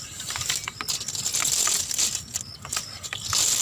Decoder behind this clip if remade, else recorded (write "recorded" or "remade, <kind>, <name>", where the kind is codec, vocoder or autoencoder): recorded